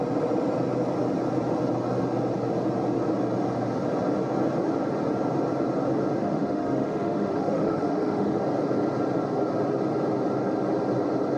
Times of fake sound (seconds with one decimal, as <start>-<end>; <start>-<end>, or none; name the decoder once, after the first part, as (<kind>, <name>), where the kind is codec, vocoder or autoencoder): 6.2-8.4 (autoencoder, DAC-VAE)